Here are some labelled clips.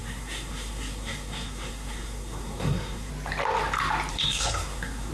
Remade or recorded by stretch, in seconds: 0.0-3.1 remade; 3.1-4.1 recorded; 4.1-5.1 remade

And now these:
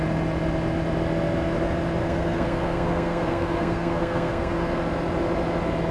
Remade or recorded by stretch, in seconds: 0.0-2.0 recorded; 2.0-4.8 remade; 4.8-5.9 recorded

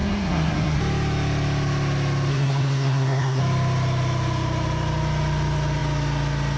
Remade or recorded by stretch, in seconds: 0.0-0.8 remade; 0.8-2.3 recorded; 2.3-3.4 remade; 3.4-6.6 recorded

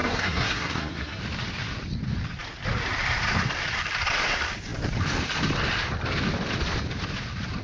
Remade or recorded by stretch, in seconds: 0.0-1.2 remade; 1.2-7.6 recorded

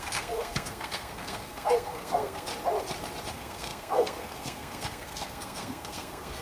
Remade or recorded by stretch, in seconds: 0.0-2.5 remade; 2.5-3.3 recorded; 3.3-6.4 remade